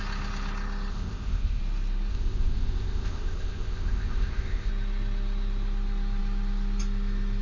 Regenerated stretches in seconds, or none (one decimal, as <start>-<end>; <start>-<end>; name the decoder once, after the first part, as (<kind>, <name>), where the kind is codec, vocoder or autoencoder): 0.9-1.6 (codec, ZipCodec); 2.1-4.7

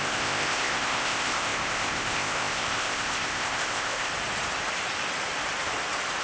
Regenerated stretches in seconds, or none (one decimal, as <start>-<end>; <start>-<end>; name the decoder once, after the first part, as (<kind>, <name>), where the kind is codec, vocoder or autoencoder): 0.0-4.1 (codec, ZipCodec)

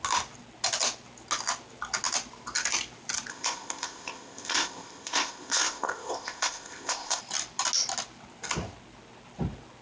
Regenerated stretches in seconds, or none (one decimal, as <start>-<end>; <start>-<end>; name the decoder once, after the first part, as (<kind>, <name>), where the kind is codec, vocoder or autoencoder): 3.3-7.2 (codec, ZipCodec)

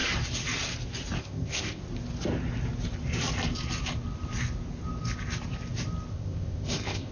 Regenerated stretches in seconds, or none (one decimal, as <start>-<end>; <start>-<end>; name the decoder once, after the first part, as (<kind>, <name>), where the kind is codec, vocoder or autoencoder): 1.2-1.8 (codec, ZipCodec); 6.1-7.1